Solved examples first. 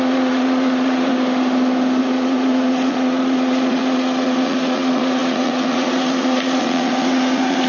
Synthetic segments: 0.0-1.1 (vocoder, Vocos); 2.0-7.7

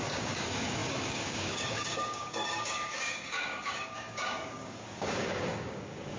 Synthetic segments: 0.0-6.2 (codec, DAC)